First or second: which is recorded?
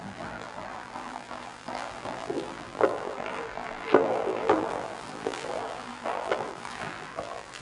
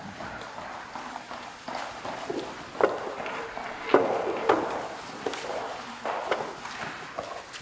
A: second